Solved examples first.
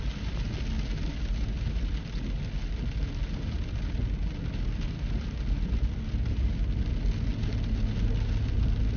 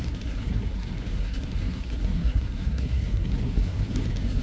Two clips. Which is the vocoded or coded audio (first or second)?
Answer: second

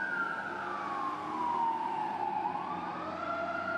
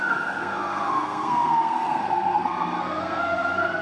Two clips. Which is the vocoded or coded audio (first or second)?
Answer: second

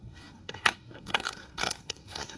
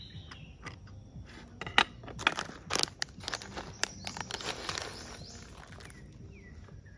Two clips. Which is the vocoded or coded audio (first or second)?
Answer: first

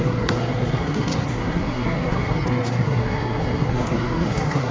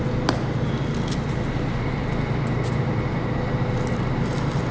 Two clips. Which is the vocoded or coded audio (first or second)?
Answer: first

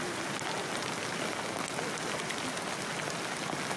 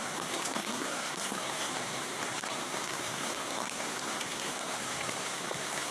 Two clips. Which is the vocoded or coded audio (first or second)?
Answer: second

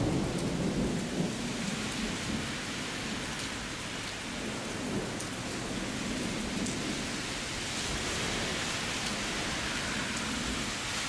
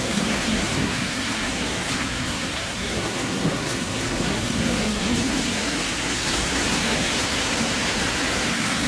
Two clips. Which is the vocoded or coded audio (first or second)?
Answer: second